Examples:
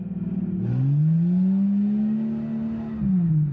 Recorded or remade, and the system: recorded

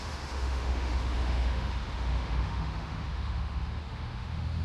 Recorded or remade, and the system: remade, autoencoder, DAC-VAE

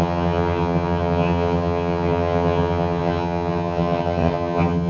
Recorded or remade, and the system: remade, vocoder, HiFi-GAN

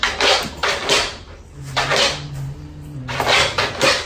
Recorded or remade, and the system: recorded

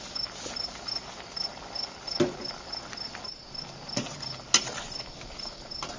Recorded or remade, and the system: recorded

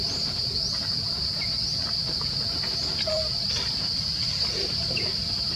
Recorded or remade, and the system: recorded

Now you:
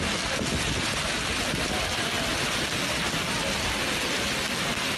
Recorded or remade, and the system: recorded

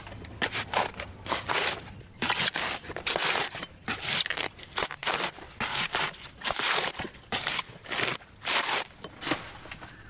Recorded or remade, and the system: recorded